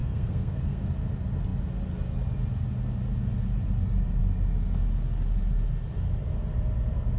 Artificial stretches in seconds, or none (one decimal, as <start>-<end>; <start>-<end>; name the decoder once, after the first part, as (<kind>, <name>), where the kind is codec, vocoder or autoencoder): 0.0-0.9 (codec, SNAC)